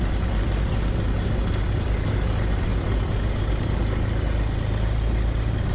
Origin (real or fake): real